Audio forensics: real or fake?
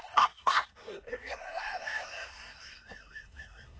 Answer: fake